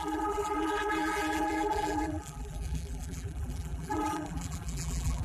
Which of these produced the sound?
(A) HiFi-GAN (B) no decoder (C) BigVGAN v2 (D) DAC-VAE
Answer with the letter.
C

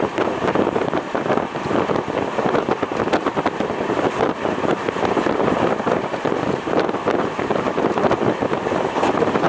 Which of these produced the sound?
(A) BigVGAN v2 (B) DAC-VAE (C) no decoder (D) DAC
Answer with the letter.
A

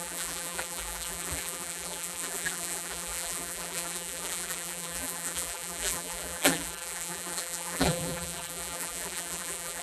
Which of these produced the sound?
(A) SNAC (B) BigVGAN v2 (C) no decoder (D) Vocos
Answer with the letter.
B